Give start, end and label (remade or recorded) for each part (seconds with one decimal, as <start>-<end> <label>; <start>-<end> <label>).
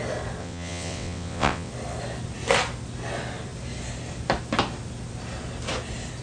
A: 0.0-0.4 recorded; 0.4-1.7 remade; 1.7-6.2 recorded